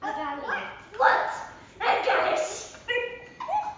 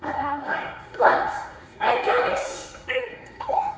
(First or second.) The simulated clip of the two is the second